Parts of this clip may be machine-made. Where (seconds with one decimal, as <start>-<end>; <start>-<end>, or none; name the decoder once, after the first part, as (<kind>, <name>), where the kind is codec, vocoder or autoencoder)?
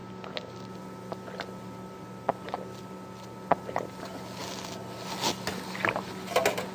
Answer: none